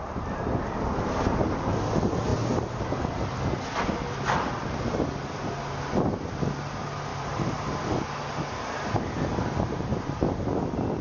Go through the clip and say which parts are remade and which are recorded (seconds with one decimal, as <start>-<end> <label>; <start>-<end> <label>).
0.0-7.1 recorded; 7.1-7.8 remade; 7.8-9.9 recorded; 9.9-10.6 remade; 10.6-11.0 recorded